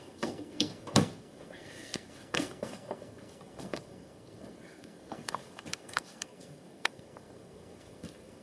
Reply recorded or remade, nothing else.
remade